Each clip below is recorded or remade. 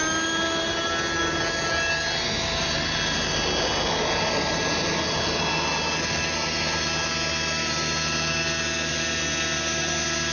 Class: recorded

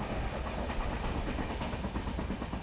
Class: recorded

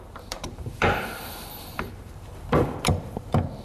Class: remade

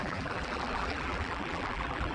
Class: remade